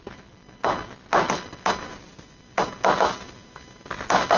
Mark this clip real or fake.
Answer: real